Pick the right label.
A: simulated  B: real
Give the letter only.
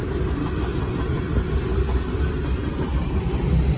B